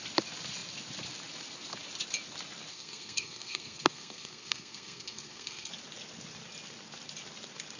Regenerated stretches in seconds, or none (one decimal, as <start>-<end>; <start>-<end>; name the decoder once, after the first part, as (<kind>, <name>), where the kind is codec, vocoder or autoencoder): 2.7-5.7 (codec, SNAC)